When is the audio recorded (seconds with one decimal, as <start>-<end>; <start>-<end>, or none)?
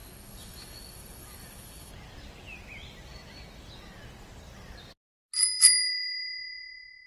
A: 1.9-7.1